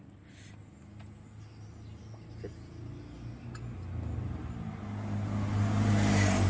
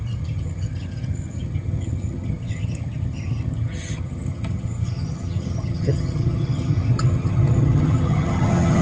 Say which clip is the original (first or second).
first